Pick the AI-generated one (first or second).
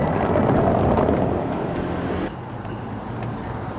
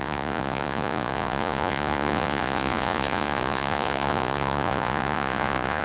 second